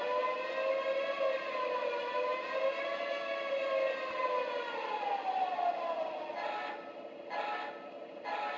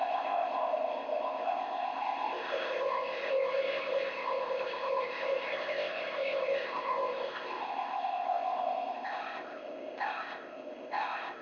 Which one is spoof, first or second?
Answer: second